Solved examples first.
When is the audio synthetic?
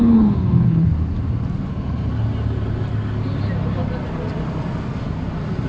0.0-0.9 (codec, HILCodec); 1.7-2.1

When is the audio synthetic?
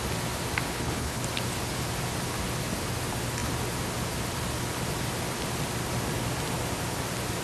0.7-1.2 (codec, HILCodec)